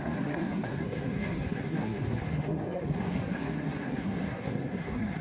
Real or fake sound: fake